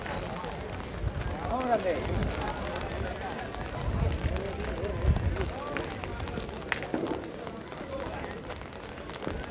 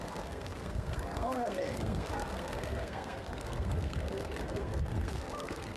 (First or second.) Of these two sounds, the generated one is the second